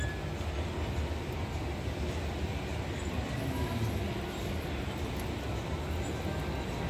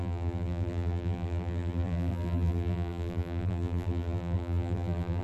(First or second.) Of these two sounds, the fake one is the second